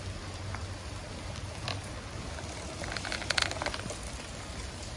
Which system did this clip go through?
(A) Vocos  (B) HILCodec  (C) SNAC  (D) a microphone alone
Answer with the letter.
D